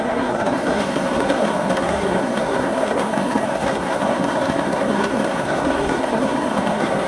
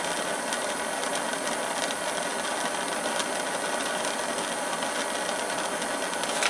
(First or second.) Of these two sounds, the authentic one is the second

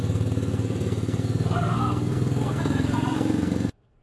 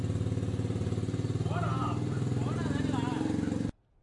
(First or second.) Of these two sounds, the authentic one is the second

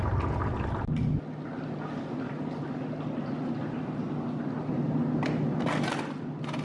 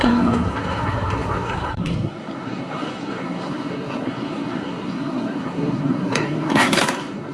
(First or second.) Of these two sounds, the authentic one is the first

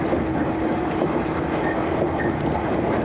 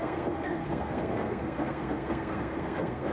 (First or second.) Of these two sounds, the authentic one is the first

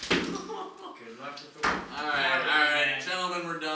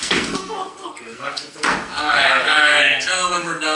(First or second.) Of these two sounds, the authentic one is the first